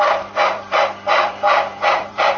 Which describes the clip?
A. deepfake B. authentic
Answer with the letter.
A